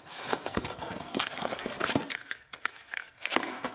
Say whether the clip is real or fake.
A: fake